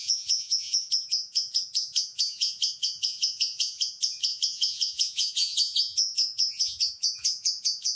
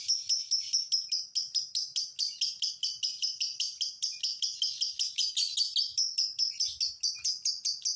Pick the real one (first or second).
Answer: second